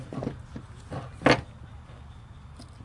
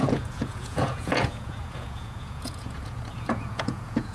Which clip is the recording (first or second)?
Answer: first